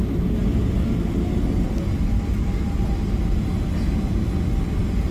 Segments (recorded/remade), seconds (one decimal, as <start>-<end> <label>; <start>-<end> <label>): 0.0-5.1 recorded